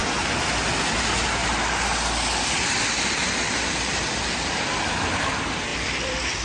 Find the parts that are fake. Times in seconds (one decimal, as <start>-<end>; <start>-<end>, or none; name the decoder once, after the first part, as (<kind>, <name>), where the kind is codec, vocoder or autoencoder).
1.4-5.2 (vocoder, BigVGAN v2); 5.7-6.4